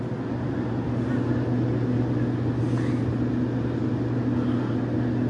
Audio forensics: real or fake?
real